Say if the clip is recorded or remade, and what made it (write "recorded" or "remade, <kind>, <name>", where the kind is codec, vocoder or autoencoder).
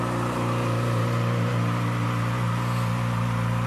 recorded